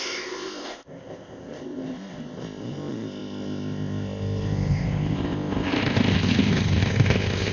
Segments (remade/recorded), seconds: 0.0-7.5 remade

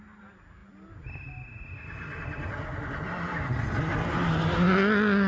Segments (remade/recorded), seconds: 0.0-5.3 recorded

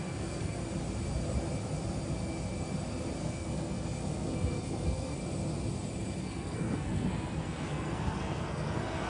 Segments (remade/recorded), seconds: 0.0-0.6 remade; 0.6-3.2 recorded; 3.2-5.2 remade; 5.2-6.2 recorded; 6.2-9.1 remade

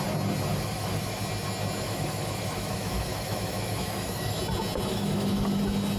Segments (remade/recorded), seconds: 0.0-0.5 recorded; 0.5-1.2 remade; 1.2-1.8 recorded; 1.8-4.4 remade; 4.4-4.9 recorded; 4.9-5.6 remade; 5.6-6.0 recorded

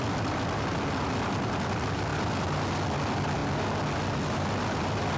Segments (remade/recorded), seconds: 0.0-5.2 recorded

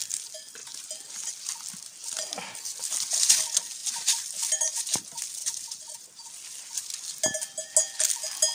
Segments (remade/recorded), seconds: 0.0-0.6 recorded; 0.6-1.4 remade; 1.4-3.8 recorded; 3.8-4.8 remade; 4.8-5.4 recorded; 5.4-6.9 remade; 6.9-8.5 recorded

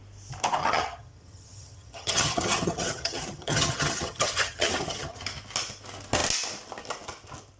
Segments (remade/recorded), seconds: 0.0-0.6 recorded; 0.6-5.2 remade; 5.2-7.6 recorded